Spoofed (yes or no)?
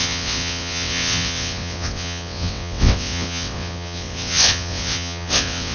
yes